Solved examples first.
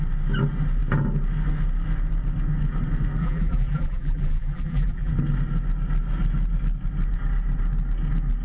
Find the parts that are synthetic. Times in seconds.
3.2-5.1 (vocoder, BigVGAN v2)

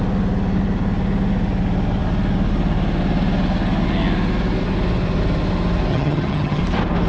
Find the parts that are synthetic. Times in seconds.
5.9-6.6 (vocoder, HiFi-GAN)

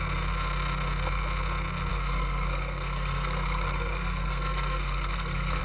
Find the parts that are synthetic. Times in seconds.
1.9-5.6 (codec, SNAC)

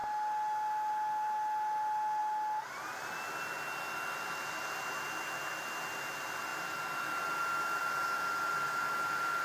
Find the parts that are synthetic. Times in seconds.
none

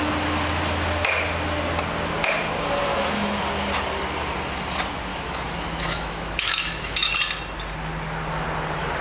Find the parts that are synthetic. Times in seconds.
2.9-3.4 (autoencoder, DAC-VAE); 5.1-7.1

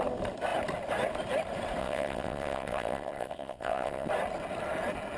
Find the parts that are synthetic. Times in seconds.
1.8-4.1 (vocoder, WaveNeXt)